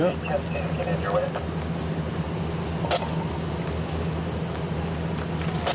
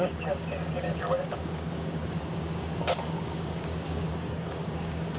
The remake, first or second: second